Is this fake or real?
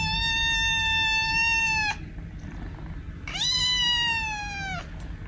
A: real